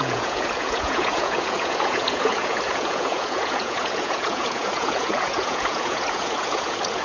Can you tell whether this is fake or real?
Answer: fake